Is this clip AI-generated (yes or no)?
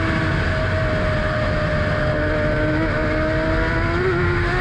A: no